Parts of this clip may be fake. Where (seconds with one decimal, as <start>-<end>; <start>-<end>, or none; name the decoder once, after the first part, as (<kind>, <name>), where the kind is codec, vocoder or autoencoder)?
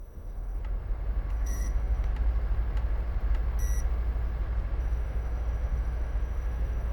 0.0-0.6 (autoencoder, DAC-VAE); 1.3-2.1; 4.8-6.9